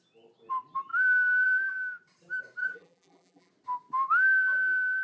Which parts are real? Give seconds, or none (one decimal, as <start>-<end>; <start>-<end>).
0.0-2.6; 3.5-5.0